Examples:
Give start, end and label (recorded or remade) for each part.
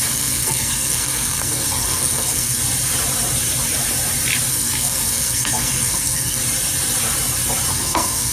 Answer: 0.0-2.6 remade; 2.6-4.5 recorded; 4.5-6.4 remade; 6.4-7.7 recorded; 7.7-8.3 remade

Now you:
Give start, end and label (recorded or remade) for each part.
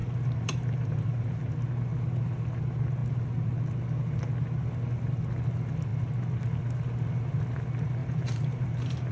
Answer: 0.0-1.4 remade; 1.4-8.0 recorded; 8.0-9.1 remade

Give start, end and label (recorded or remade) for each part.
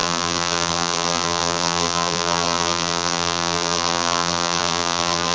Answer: 0.0-5.3 remade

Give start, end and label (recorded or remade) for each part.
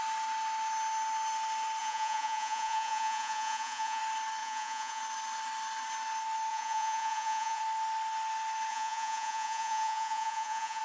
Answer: 0.0-1.8 recorded; 1.8-4.0 remade; 4.0-4.4 recorded; 4.4-5.0 remade; 5.0-6.5 recorded; 6.5-7.6 remade; 7.6-8.7 recorded; 8.7-10.8 remade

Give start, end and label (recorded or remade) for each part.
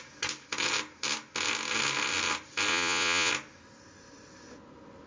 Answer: 0.0-2.7 recorded; 2.7-3.3 remade; 3.3-5.1 recorded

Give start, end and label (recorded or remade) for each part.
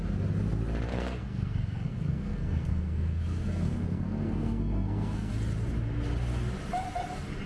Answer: 0.0-0.9 recorded; 0.9-5.3 remade; 5.3-7.5 recorded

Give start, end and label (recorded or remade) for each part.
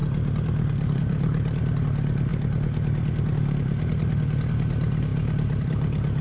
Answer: 0.0-6.2 recorded